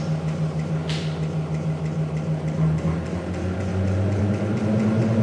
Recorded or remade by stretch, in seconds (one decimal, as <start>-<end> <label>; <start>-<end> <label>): 0.0-5.2 recorded